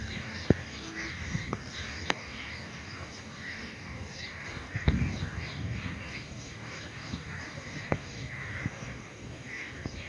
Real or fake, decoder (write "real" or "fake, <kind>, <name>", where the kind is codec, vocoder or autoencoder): fake, codec, DAC